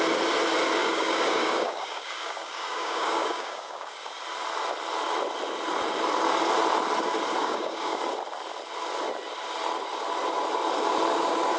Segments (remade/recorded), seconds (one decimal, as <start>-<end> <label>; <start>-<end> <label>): 0.0-0.8 recorded; 0.8-4.1 remade; 4.1-7.4 recorded; 7.4-8.0 remade; 8.0-11.6 recorded